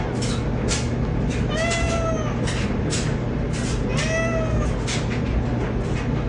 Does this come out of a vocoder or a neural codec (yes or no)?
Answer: no